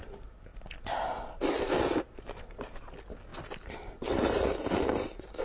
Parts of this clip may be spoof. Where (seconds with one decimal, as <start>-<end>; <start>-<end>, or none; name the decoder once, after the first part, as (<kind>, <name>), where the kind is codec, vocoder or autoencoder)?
3.3-5.4 (vocoder, BigVGAN v2)